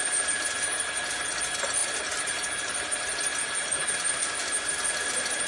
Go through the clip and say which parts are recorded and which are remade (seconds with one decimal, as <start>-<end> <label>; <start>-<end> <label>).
0.0-5.5 recorded